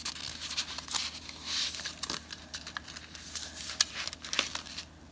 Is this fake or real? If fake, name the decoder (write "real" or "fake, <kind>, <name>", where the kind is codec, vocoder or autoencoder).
real